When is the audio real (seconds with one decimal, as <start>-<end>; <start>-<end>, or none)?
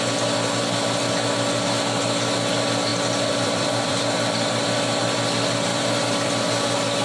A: 0.0-2.9; 4.0-5.7; 6.3-7.0